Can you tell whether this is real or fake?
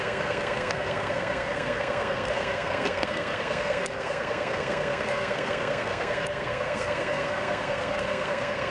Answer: fake